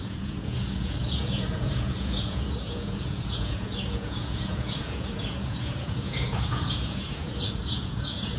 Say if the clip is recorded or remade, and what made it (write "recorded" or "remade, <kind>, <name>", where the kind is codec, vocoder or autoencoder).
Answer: remade, vocoder, Vocos